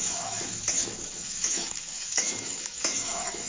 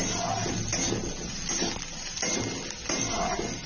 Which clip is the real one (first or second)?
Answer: second